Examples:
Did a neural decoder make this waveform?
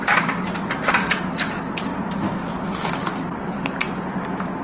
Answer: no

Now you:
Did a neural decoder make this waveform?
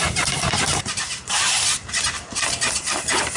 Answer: yes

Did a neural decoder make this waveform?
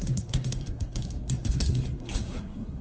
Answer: yes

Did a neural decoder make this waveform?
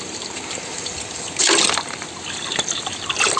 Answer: no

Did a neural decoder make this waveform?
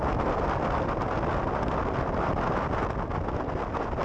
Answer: no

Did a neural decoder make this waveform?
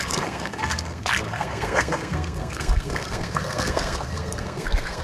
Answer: yes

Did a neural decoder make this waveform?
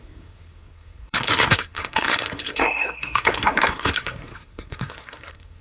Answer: yes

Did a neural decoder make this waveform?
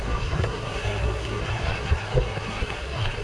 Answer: yes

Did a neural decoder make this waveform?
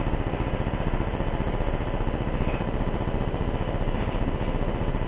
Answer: no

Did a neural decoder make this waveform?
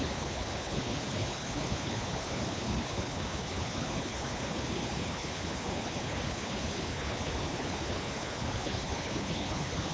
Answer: yes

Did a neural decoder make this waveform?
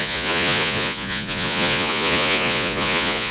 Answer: yes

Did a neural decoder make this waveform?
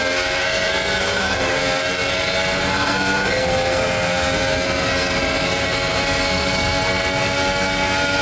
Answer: yes